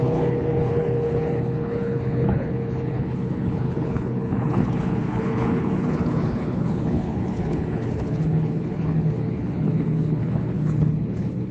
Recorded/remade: remade